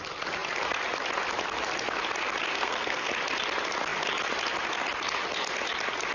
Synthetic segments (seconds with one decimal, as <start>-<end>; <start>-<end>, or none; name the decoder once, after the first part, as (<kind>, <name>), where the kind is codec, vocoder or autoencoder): 2.5-3.1 (codec, SNAC)